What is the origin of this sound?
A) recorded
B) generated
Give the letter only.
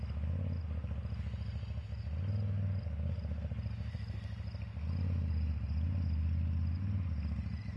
A